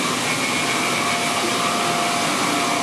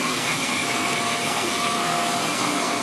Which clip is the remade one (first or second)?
second